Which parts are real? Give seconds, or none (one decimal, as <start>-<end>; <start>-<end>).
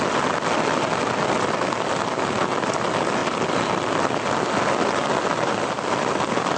0.0-6.6